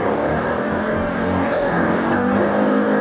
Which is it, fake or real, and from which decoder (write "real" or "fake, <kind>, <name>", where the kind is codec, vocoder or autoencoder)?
fake, codec, DAC